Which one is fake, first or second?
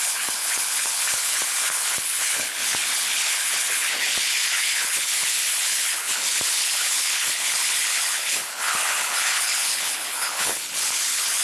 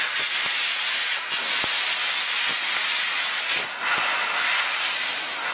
first